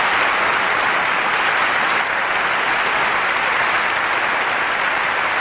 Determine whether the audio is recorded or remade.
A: recorded